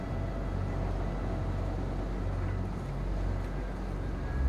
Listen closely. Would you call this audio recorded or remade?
recorded